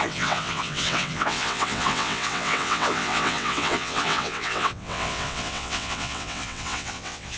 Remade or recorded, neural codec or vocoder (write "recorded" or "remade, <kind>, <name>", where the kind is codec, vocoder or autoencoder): remade, vocoder, WaveNeXt